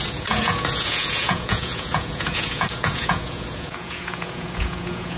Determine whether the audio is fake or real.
fake